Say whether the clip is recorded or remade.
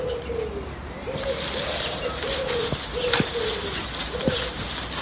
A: recorded